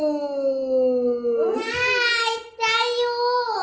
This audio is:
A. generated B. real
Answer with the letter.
B